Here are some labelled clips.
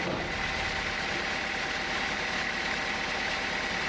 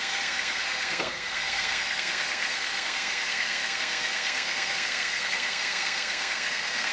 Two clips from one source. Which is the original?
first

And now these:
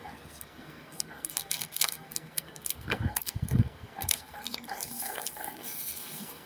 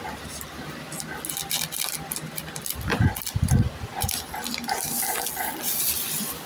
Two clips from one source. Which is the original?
second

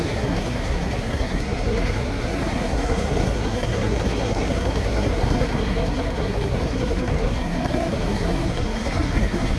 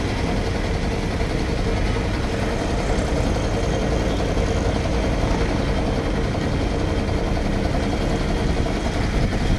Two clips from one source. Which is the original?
second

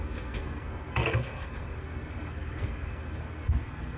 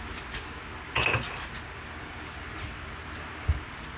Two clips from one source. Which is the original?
second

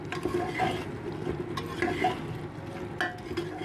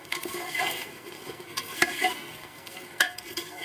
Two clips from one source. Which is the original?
first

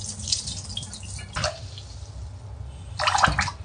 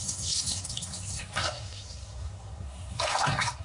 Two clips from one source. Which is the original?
first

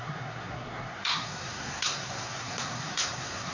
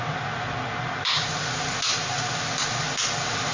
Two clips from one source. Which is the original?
second